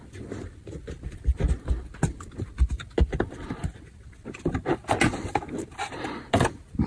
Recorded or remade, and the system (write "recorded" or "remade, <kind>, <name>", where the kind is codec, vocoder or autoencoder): recorded